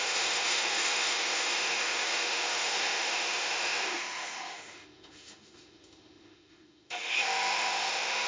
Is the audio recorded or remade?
remade